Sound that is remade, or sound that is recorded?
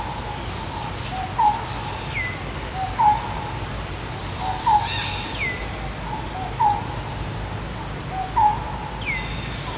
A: recorded